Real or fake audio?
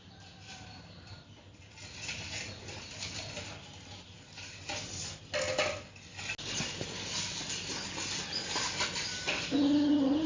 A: real